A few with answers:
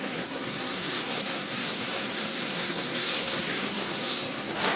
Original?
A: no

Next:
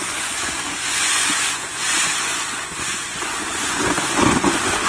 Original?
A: no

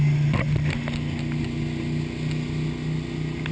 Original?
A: yes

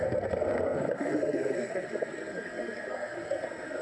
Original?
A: no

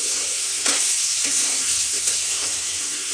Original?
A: no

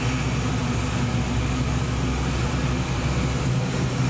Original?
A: yes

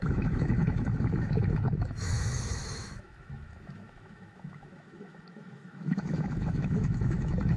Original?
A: no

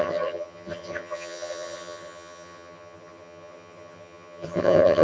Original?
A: no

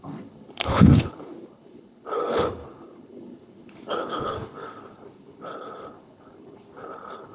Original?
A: no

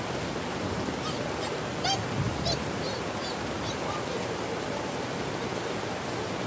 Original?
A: yes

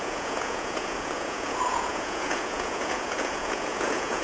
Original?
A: no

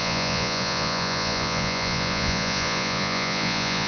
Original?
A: no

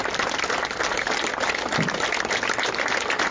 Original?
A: yes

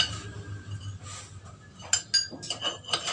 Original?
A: yes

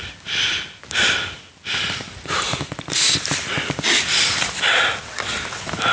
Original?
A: yes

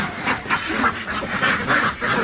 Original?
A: no